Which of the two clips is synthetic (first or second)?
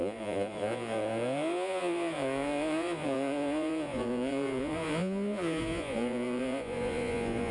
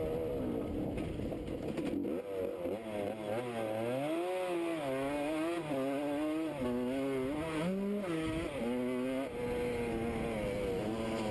first